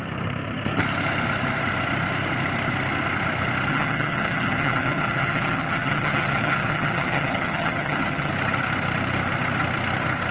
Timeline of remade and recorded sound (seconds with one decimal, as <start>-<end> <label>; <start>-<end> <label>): 0.0-3.7 recorded; 3.7-8.3 remade; 8.3-10.3 recorded